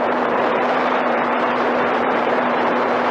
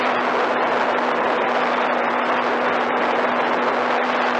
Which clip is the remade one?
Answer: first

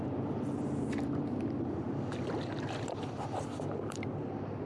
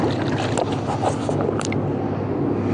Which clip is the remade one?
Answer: first